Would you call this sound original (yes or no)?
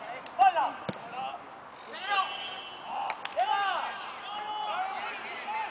yes